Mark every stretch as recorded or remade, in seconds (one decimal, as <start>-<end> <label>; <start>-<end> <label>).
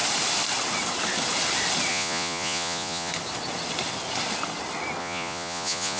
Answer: 0.0-1.9 recorded; 1.9-3.1 remade; 3.1-5.0 recorded; 5.0-6.0 remade